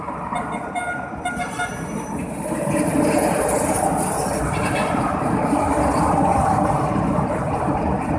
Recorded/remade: recorded